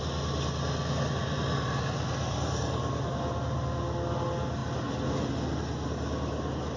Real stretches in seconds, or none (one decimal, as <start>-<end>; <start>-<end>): 0.0-1.2; 2.6-4.6; 5.3-6.8